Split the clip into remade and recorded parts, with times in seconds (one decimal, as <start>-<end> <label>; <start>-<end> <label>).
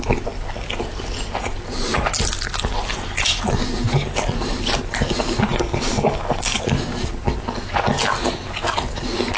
0.0-5.5 recorded; 5.5-6.6 remade; 6.6-9.4 recorded